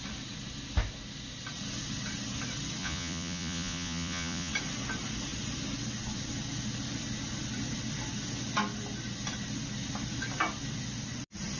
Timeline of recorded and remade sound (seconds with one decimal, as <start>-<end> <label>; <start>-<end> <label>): 0.0-2.8 recorded; 2.8-4.5 remade; 4.5-11.6 recorded